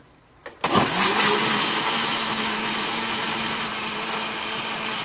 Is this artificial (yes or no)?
yes